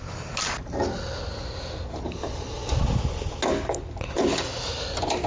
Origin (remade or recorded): recorded